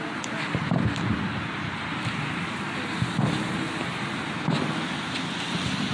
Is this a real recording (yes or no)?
yes